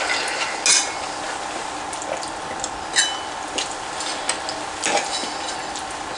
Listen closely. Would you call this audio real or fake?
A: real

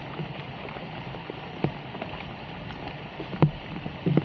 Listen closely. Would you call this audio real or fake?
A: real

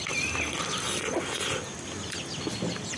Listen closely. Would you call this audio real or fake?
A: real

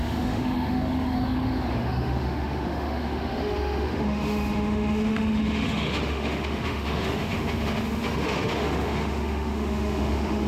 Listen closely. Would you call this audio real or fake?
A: fake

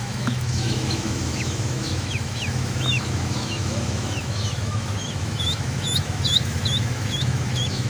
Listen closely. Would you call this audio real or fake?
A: fake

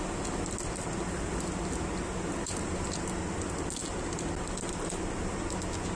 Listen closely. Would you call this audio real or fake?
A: real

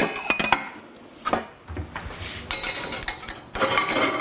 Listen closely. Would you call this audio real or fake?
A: real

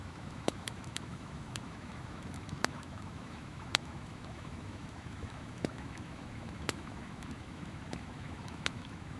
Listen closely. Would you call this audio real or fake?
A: fake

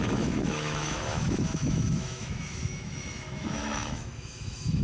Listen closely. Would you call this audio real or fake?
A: fake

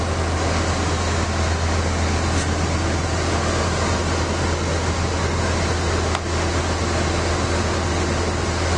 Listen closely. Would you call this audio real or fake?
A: real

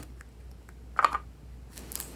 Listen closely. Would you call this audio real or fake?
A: real